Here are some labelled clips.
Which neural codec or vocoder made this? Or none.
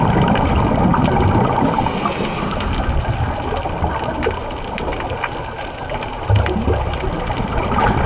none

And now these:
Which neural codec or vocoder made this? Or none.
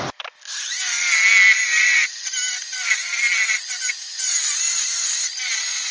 none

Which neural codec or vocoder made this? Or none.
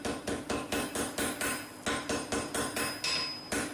none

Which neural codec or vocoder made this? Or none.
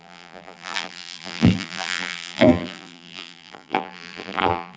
vocoder, BigVGAN v2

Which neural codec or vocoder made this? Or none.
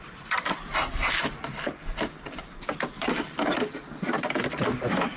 vocoder, BigVGAN v2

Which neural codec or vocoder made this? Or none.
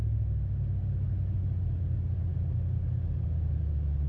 none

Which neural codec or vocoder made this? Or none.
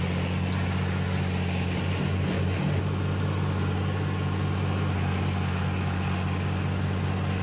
none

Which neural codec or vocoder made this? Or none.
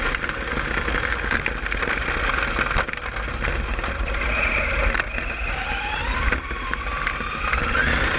none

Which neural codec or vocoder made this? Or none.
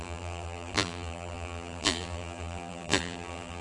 vocoder, BigVGAN v2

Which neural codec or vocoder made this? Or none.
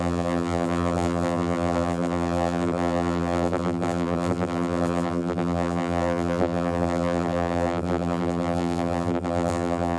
vocoder, BigVGAN v2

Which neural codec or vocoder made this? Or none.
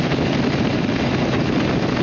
vocoder, BigVGAN v2